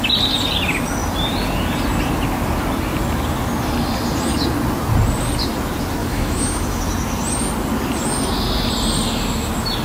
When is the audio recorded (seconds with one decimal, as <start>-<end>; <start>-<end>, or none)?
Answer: 0.0-6.0; 6.8-9.8